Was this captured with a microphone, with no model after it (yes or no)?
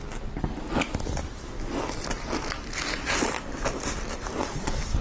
yes